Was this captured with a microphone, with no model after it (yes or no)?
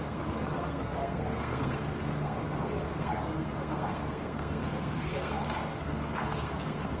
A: no